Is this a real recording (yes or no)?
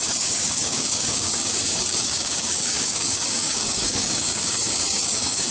no